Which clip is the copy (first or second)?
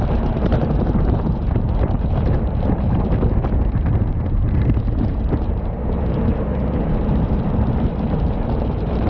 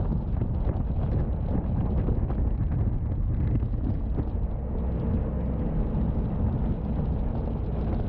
first